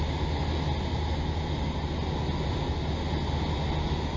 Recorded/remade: recorded